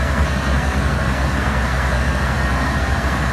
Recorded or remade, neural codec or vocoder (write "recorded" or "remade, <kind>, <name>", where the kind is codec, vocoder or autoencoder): remade, codec, SNAC